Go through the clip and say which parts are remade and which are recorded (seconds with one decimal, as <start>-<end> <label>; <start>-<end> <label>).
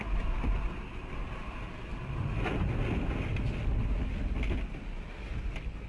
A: 0.0-5.9 recorded